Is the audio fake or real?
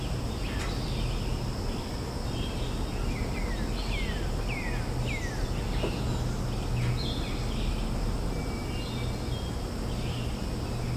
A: real